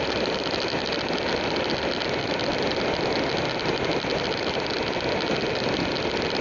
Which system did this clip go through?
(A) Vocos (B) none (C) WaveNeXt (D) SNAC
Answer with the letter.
B